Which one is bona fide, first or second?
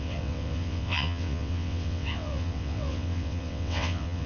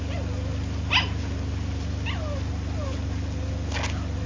second